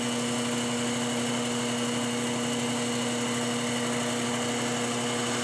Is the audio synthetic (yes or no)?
no